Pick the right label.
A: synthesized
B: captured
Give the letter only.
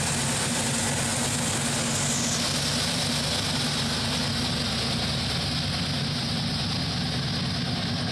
B